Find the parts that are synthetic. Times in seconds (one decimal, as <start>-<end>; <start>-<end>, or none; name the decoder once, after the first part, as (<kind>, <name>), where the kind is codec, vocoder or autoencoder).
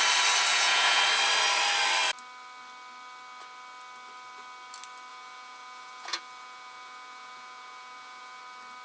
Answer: 0.5-1.0 (vocoder, Vocos); 5.1-8.4